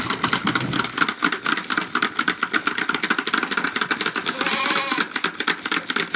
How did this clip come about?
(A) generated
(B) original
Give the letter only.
B